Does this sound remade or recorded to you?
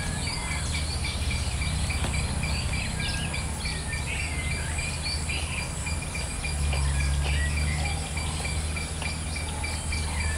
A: recorded